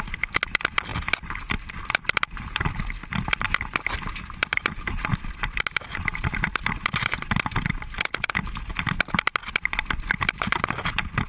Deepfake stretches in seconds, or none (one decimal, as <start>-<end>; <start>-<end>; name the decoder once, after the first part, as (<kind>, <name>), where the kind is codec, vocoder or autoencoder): 5.1-8.7 (vocoder, BigVGAN v2)